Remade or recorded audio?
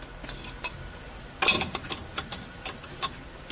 recorded